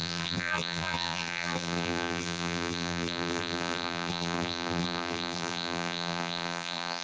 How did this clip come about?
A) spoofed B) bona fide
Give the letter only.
A